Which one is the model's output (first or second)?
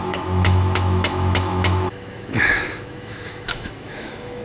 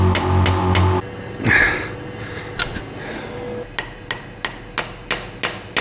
first